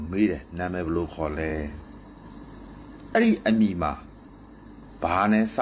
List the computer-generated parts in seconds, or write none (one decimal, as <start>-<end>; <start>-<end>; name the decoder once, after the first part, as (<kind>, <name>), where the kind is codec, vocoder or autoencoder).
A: 0.0-1.1 (vocoder, BigVGAN v2); 1.5-4.9